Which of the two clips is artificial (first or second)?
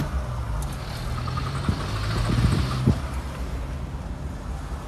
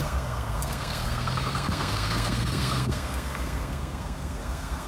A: second